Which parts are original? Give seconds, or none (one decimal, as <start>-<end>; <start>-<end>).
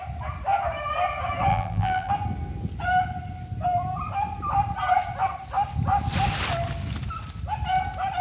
0.0-1.5; 2.1-8.2